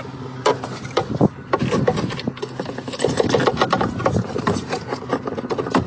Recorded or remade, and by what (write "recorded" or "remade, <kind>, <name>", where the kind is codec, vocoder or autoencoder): recorded